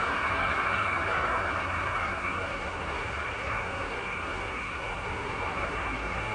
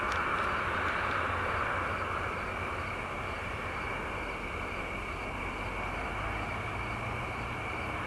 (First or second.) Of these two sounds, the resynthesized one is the first